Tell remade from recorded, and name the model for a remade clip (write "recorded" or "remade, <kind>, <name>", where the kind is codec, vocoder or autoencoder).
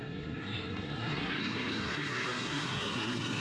remade, codec, SNAC